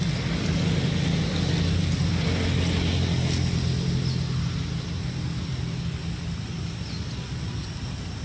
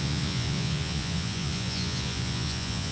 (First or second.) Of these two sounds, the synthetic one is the second